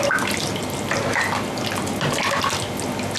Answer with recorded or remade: recorded